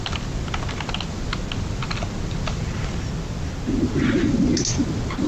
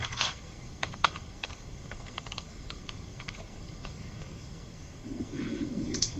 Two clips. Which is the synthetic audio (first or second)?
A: second